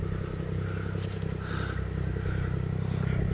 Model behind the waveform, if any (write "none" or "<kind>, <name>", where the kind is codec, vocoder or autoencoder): none